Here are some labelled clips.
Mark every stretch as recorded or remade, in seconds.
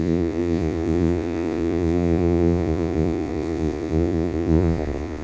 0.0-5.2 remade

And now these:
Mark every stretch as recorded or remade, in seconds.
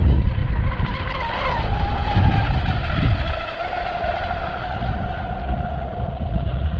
0.0-0.4 remade; 0.4-4.5 recorded; 4.5-6.8 remade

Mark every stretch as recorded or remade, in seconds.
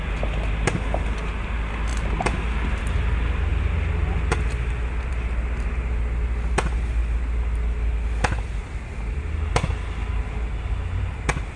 0.0-11.6 recorded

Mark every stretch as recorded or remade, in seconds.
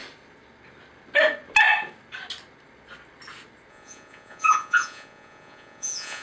0.0-3.7 recorded; 3.7-6.2 remade